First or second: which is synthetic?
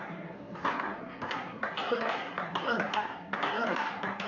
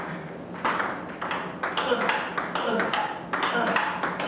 first